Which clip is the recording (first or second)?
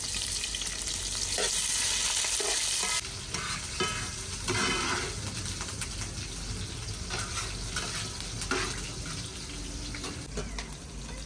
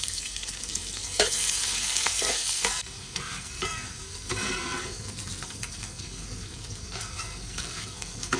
first